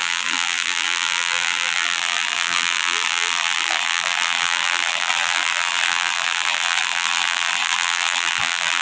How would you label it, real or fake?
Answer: fake